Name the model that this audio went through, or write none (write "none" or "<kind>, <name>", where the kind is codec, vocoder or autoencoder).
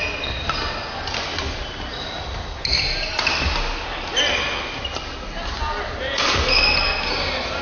none